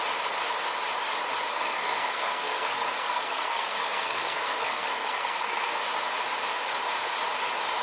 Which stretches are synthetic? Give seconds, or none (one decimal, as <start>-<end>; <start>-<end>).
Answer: 1.5-5.7